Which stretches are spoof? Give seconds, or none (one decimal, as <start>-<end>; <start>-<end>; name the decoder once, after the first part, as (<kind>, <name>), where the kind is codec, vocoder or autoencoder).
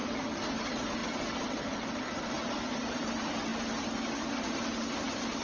0.6-3.5 (vocoder, BigVGAN v2); 4.2-5.4